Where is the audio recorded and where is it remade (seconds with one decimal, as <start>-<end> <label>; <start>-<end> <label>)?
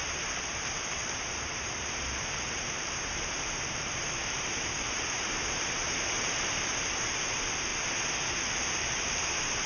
0.0-7.7 remade; 7.7-8.3 recorded; 8.3-9.7 remade